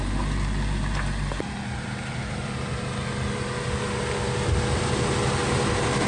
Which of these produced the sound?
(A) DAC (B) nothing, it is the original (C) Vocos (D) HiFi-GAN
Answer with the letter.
B